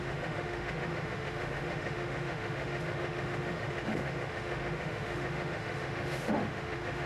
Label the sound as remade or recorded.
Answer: remade